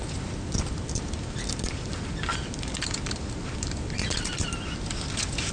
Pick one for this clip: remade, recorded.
recorded